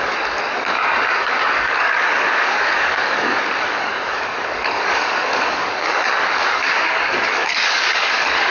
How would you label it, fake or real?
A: fake